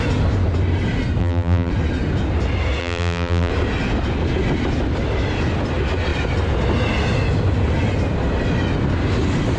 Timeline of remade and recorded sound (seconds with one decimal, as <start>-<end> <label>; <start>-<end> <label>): 0.0-1.2 recorded; 1.2-1.7 remade; 1.7-2.8 recorded; 2.8-3.5 remade; 3.5-9.6 recorded